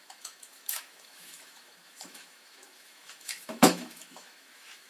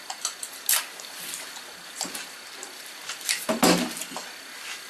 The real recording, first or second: second